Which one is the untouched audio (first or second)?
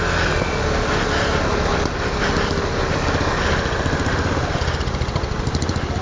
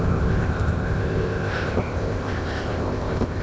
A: first